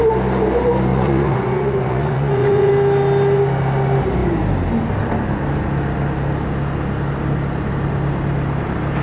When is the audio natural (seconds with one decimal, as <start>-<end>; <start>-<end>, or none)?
0.0-0.9; 2.7-9.0

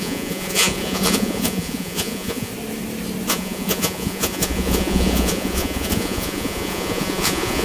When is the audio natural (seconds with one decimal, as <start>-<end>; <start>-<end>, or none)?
2.5-3.3

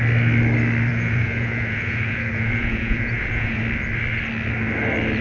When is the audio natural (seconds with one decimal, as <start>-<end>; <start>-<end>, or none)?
0.0-0.9; 3.6-5.2